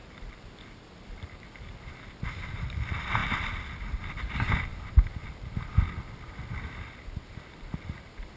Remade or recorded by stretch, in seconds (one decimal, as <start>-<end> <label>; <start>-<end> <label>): 0.0-8.4 recorded